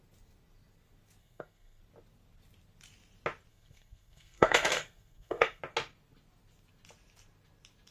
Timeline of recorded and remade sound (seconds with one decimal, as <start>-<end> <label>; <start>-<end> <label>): 0.0-1.2 recorded; 1.2-1.8 remade; 1.8-3.5 recorded; 3.5-5.6 remade; 5.6-7.9 recorded